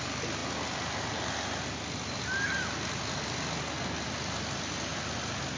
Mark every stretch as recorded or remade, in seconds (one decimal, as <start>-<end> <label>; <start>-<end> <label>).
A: 0.0-5.6 recorded